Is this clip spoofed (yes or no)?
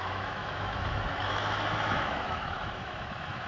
yes